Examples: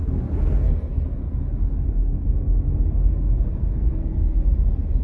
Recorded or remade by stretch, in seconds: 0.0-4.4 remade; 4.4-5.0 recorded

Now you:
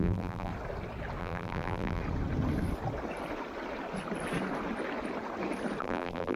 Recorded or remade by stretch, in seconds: 0.0-0.5 remade; 0.5-1.2 recorded; 1.2-2.0 remade; 2.0-5.8 recorded; 5.8-6.4 remade

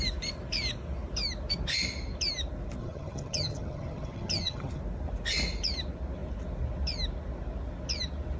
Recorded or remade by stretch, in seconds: 0.0-2.8 recorded; 2.8-4.8 remade; 4.8-8.4 recorded

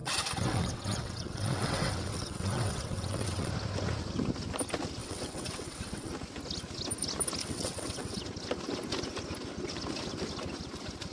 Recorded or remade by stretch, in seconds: 0.0-3.5 remade; 3.5-5.0 recorded; 5.0-6.1 remade; 6.1-7.4 recorded; 7.4-8.2 remade; 8.2-11.1 recorded

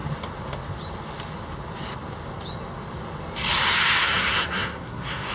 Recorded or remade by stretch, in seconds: 0.0-4.0 recorded; 4.0-5.3 remade